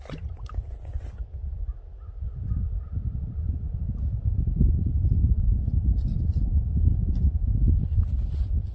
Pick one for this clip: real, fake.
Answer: real